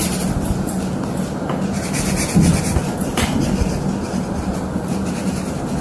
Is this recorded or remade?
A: recorded